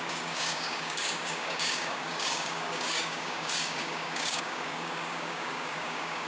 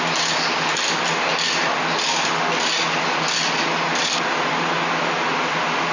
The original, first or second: second